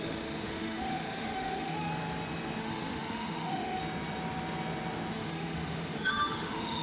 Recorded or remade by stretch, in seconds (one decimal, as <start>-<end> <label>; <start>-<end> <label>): 0.0-1.9 remade; 1.9-2.6 recorded; 2.6-3.8 remade; 3.8-5.1 recorded; 5.1-6.8 remade